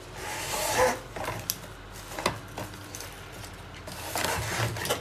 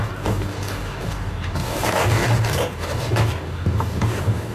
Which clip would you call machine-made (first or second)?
second